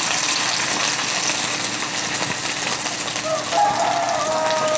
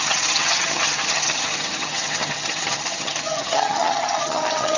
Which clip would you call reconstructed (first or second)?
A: second